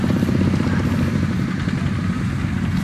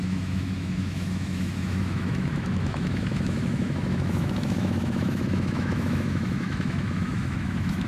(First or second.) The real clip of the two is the first